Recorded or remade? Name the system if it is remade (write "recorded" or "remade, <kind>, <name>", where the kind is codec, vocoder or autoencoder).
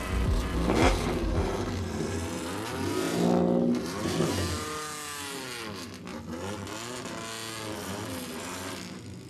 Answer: recorded